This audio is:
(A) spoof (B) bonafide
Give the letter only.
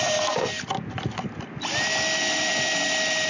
B